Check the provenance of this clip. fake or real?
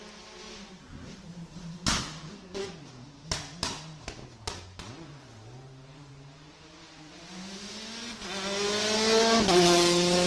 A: real